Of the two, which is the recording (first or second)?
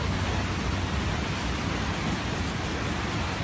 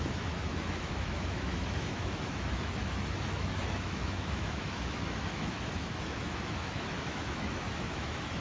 first